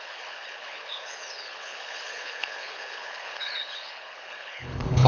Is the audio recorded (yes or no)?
no